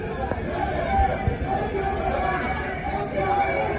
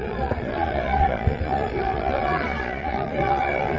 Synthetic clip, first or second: second